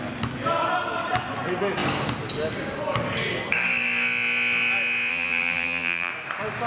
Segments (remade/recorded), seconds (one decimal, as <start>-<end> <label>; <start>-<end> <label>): 0.0-5.1 recorded; 5.1-6.1 remade; 6.1-6.7 recorded